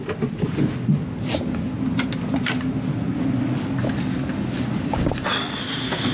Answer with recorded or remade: recorded